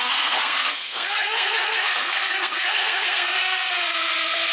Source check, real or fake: fake